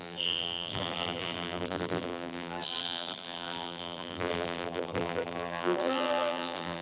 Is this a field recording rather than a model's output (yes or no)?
no